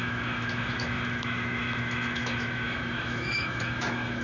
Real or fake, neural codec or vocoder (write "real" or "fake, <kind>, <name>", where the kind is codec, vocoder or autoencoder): fake, autoencoder, DAC-VAE